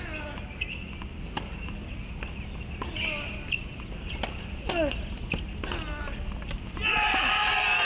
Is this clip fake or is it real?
real